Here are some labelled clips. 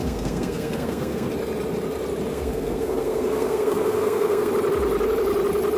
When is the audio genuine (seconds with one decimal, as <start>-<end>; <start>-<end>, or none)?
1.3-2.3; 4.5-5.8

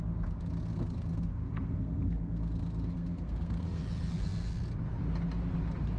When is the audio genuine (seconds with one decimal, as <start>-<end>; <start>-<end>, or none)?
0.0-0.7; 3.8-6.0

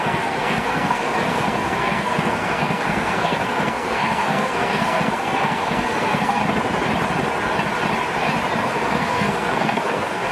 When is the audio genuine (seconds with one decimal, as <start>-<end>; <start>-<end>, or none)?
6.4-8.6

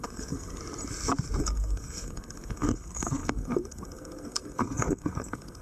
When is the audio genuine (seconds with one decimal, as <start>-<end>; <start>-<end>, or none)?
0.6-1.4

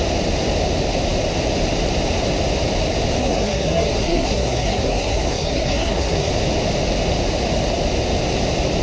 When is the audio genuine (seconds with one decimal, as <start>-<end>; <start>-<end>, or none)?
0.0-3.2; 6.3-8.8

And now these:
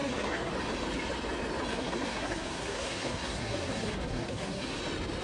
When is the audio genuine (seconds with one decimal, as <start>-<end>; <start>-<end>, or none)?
0.5-1.7; 4.8-5.2

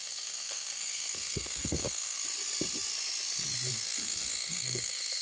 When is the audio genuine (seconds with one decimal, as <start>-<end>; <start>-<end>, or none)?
2.2-3.7